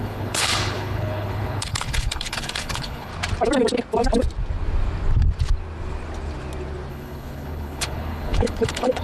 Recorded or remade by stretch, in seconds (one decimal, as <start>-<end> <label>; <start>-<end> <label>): 0.0-3.1 remade; 3.1-6.9 recorded; 6.9-9.0 remade